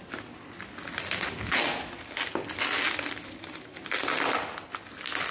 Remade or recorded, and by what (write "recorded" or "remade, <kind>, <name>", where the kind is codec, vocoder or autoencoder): recorded